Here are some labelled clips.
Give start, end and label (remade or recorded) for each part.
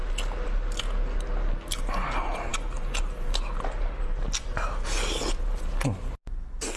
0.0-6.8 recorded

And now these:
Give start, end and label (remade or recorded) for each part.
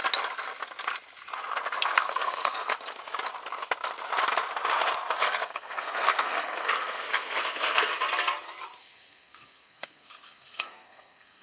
0.0-1.8 recorded; 1.8-2.7 remade; 2.7-5.2 recorded; 5.2-7.9 remade; 7.9-8.8 recorded; 8.8-11.4 remade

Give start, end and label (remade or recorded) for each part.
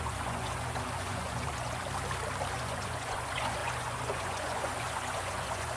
0.0-1.8 remade; 1.8-2.5 recorded; 2.5-5.8 remade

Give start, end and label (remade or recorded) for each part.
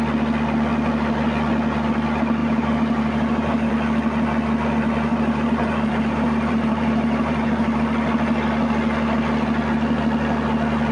0.0-2.4 recorded; 2.4-3.7 remade; 3.7-5.1 recorded; 5.1-7.8 remade; 7.8-10.9 recorded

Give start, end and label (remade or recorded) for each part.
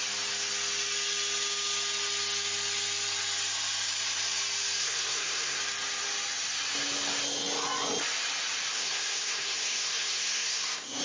0.0-4.8 recorded; 4.8-5.6 remade; 5.6-8.7 recorded; 8.7-11.0 remade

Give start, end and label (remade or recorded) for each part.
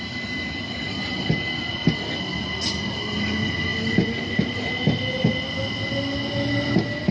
0.0-7.1 recorded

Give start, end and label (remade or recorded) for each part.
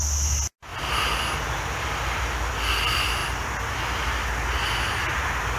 0.0-5.6 recorded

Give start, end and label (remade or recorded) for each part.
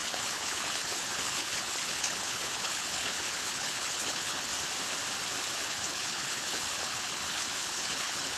0.0-4.5 remade; 4.5-5.5 recorded; 5.5-8.4 remade